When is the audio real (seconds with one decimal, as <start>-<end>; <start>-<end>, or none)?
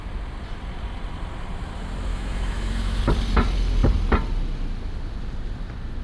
0.0-2.1; 3.0-6.0